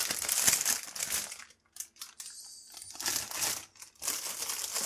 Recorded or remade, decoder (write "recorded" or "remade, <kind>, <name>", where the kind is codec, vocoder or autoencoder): recorded